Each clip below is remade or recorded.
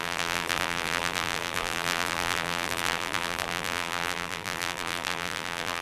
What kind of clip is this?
remade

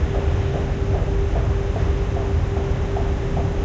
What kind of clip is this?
recorded